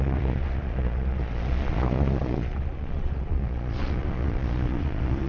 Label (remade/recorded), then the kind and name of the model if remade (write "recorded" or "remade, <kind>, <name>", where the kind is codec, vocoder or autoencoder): remade, vocoder, Vocos